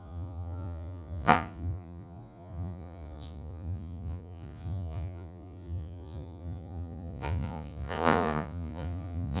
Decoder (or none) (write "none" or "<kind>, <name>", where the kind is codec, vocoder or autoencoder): vocoder, Vocos